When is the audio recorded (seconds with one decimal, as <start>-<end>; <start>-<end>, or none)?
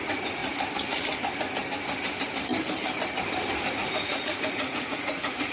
0.4-3.7